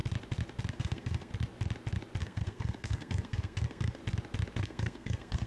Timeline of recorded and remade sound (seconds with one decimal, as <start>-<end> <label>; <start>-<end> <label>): 0.0-0.7 recorded; 0.7-1.3 remade; 1.3-2.2 recorded; 2.2-4.0 remade; 4.0-4.6 recorded; 4.6-5.5 remade